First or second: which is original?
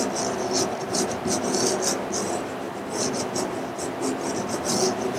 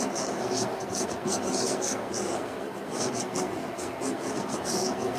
first